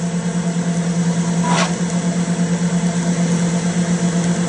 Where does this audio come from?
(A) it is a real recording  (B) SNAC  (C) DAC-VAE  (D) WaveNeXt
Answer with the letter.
A